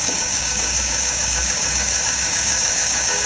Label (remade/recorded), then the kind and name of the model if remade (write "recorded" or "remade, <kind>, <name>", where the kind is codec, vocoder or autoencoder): remade, codec, DAC